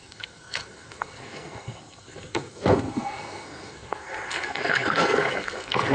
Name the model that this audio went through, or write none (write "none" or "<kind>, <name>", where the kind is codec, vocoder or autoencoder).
codec, SNAC